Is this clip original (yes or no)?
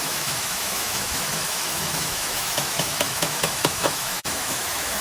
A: no